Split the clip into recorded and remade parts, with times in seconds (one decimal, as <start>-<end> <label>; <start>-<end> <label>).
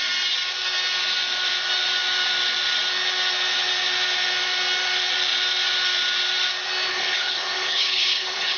0.0-6.9 recorded; 6.9-8.6 remade